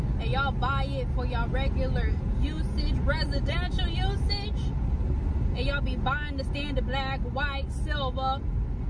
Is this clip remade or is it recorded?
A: recorded